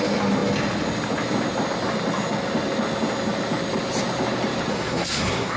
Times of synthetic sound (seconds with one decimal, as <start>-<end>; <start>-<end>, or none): 4.7-5.6